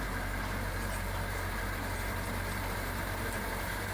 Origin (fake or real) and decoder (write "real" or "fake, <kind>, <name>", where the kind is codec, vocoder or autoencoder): fake, vocoder, BigVGAN v2